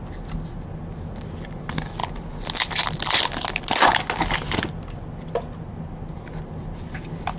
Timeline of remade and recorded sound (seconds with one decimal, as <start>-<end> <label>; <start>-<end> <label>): 0.0-7.4 recorded